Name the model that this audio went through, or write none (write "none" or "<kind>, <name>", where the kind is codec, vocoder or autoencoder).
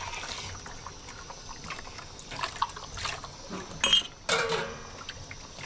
none